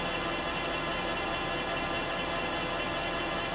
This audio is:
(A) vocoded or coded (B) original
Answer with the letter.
B